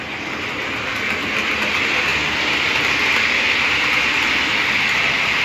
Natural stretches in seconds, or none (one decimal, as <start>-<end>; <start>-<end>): 0.0-0.9; 1.5-5.4